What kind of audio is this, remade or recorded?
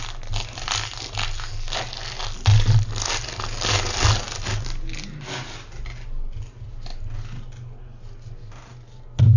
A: recorded